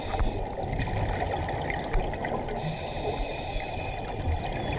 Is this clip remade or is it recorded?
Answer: recorded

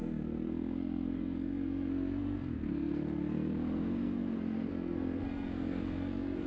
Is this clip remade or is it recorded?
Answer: remade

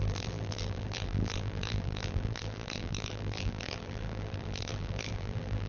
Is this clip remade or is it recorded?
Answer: remade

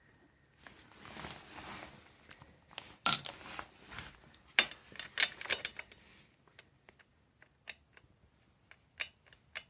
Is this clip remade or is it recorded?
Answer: recorded